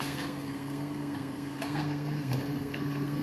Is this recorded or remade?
remade